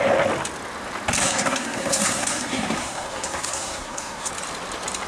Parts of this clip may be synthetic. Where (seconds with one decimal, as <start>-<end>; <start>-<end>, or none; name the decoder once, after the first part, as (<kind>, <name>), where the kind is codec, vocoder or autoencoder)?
1.2-4.3 (codec, SNAC)